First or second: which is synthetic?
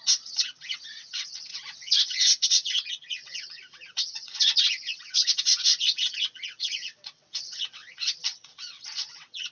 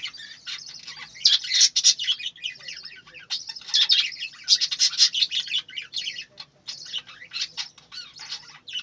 first